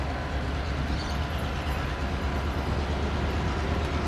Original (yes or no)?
yes